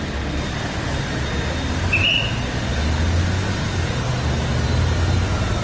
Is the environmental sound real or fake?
real